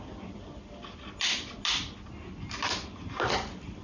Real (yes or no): yes